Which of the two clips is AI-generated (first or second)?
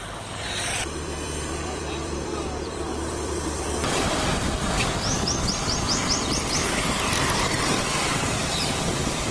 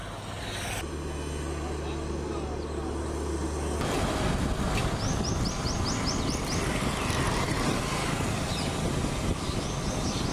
first